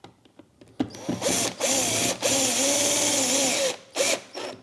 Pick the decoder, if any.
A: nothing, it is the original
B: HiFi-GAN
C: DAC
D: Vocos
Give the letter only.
A